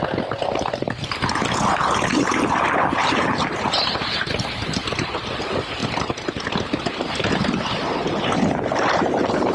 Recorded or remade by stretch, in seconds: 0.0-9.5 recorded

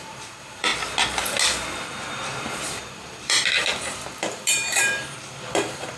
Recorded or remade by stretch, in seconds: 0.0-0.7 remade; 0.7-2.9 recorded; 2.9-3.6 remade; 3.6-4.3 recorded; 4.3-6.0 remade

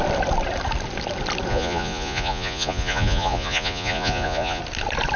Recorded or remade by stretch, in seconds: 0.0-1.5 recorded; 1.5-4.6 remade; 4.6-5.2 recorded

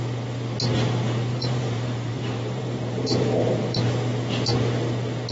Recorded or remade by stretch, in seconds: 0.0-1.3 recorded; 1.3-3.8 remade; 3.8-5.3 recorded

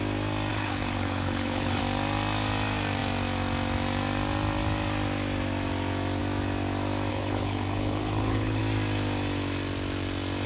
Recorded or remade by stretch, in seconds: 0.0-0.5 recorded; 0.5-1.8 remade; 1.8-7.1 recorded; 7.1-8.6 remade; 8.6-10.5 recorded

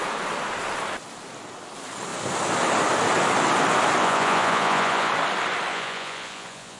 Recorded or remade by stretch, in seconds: 0.0-4.0 recorded; 4.0-5.1 remade; 5.1-5.7 recorded; 5.7-6.8 remade

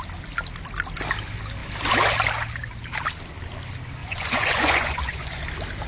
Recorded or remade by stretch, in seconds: 0.0-4.0 recorded; 4.0-5.4 remade; 5.4-5.9 recorded

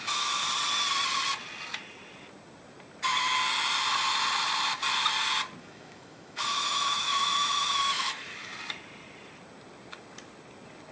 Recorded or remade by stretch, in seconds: 0.0-0.4 remade; 0.4-5.6 recorded; 5.6-8.5 remade; 8.5-10.9 recorded